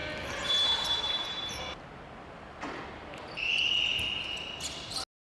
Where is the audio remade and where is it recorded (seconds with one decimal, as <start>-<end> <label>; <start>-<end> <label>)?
0.0-5.3 recorded